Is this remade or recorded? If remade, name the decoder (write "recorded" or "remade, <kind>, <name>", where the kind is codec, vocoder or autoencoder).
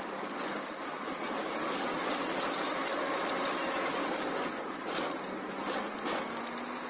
recorded